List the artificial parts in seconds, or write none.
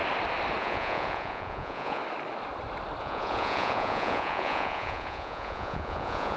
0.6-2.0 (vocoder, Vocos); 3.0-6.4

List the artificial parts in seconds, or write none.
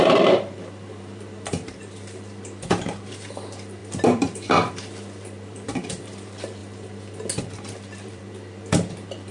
0.0-6.6 (vocoder, BigVGAN v2); 7.4-9.3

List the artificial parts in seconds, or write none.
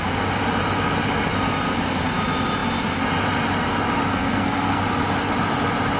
4.1-4.8 (codec, SNAC)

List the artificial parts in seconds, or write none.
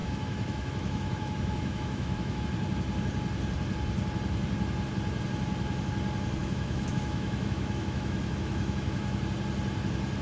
0.0-2.4 (autoencoder, DAC-VAE); 6.4-9.2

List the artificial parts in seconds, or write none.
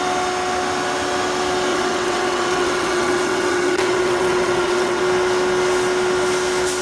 1.7-5.0 (vocoder, WaveNeXt)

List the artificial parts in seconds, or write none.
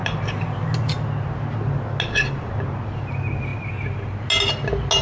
none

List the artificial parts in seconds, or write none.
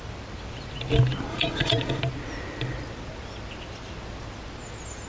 1.3-2.0 (vocoder, Vocos)